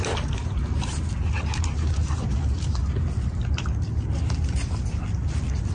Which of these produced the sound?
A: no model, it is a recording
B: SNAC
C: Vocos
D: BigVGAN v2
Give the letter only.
A